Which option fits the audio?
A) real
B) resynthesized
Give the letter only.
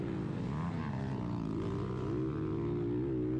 A